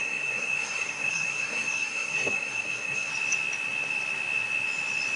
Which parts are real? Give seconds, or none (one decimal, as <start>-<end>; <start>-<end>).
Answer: 3.1-5.2